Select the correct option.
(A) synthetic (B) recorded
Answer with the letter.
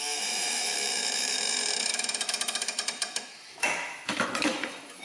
A